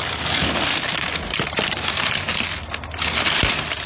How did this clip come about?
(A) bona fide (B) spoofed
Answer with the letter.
A